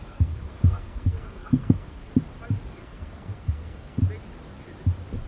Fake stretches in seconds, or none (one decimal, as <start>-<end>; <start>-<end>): 0.0-2.1; 2.8-4.0